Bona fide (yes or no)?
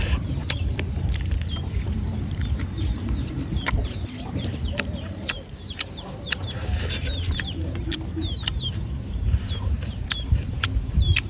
no